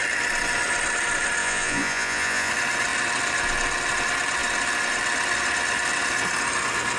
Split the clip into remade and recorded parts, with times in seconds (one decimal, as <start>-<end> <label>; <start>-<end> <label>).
0.0-1.4 recorded; 1.4-2.5 remade; 2.5-7.0 recorded